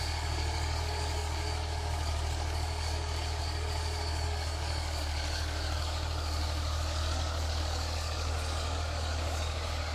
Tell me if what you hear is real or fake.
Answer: fake